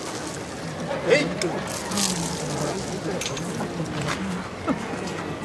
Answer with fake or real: real